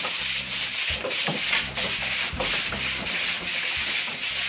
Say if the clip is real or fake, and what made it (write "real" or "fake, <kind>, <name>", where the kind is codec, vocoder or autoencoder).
real